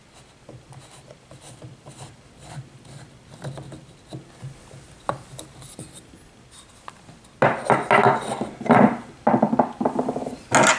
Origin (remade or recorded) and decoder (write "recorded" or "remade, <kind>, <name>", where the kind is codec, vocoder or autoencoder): recorded